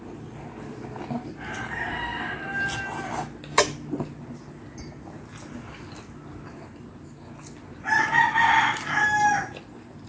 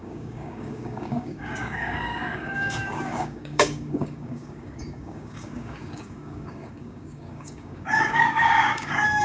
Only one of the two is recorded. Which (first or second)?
first